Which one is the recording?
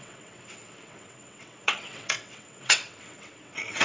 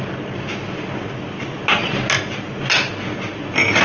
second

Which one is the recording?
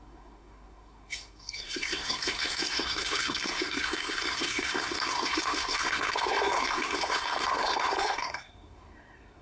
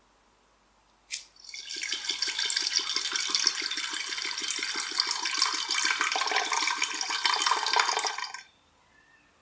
second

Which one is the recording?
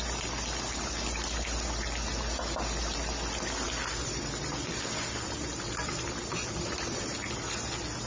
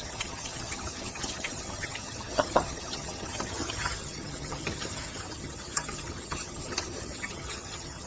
first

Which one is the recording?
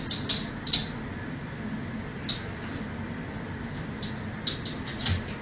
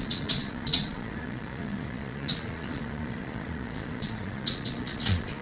first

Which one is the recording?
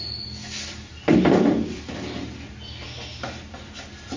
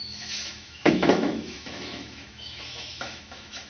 first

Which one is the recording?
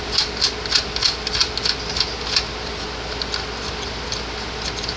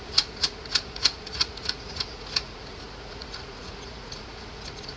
first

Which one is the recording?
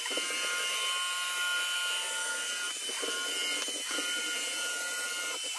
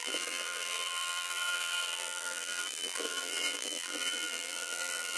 first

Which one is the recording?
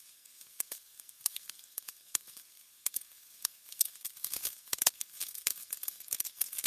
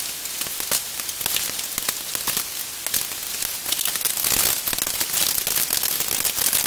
second